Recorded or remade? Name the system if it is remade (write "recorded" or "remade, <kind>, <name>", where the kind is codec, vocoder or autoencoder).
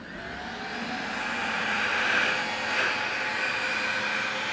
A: recorded